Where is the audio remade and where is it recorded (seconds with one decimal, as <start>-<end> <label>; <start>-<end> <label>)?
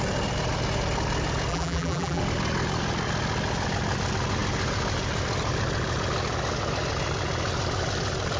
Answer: 0.0-1.5 recorded; 1.5-2.2 remade; 2.2-8.4 recorded